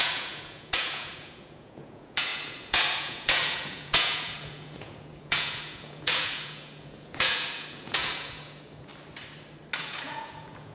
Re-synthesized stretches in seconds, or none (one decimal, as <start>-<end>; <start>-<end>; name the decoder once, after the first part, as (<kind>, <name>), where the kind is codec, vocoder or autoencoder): 0.0-8.9 (vocoder, Vocos); 9.8-10.7